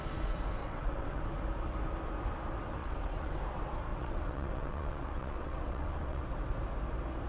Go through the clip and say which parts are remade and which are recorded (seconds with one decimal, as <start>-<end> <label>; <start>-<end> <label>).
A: 0.0-0.6 recorded; 0.6-1.2 remade; 1.2-2.8 recorded; 2.8-3.4 remade; 3.4-3.9 recorded; 3.9-6.2 remade; 6.2-7.3 recorded